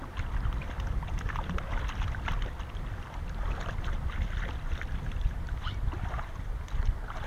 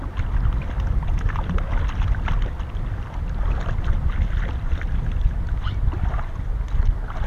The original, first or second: second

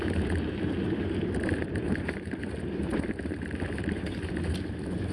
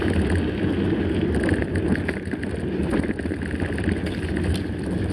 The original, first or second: second